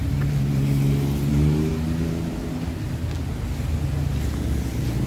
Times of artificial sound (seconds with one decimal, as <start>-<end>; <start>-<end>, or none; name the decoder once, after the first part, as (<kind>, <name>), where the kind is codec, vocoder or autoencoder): none